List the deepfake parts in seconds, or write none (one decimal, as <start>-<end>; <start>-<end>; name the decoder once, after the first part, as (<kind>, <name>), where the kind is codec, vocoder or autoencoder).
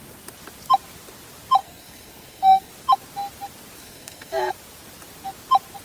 1.6-2.7 (codec, SNAC); 3.8-4.5